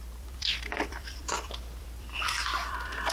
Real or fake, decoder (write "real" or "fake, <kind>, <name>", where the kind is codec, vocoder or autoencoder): fake, vocoder, BigVGAN v2